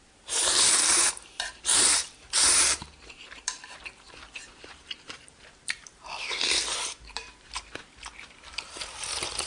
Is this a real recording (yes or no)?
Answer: no